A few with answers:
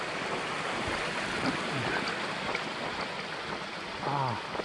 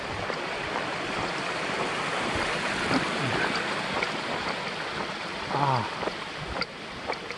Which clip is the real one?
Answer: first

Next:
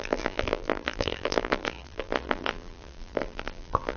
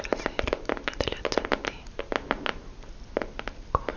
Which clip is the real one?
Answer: second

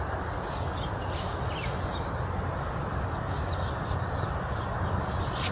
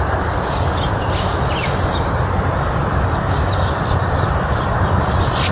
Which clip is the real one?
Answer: first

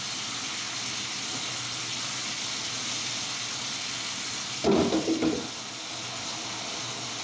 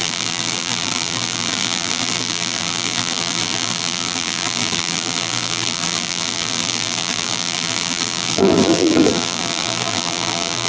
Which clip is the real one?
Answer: first